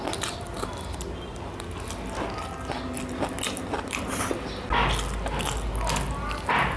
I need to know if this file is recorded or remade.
recorded